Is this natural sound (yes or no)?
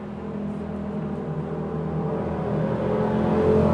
yes